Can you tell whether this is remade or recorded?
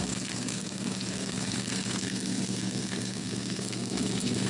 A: remade